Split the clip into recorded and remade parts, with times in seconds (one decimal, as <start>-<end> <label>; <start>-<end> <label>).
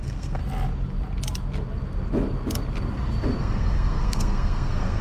0.0-0.4 remade; 0.4-3.4 recorded; 3.4-5.0 remade